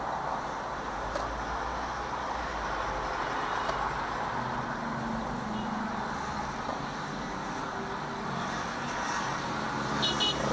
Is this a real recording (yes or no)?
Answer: yes